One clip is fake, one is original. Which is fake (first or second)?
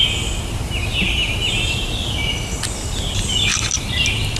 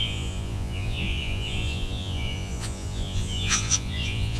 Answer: second